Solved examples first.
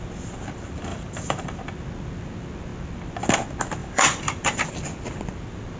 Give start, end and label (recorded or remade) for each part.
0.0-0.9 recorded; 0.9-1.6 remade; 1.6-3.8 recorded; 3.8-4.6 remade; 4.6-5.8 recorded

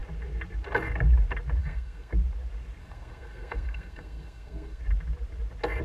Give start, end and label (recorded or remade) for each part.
0.0-1.6 recorded; 1.6-2.1 remade; 2.1-2.8 recorded; 2.8-4.8 remade; 4.8-5.8 recorded